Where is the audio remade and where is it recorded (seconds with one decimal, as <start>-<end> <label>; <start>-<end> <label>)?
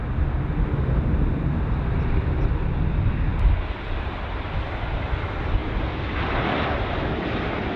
0.0-7.8 recorded